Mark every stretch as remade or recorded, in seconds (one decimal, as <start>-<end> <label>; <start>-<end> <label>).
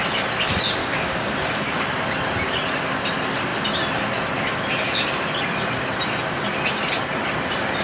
0.0-0.8 recorded; 0.8-1.7 remade; 1.7-7.8 recorded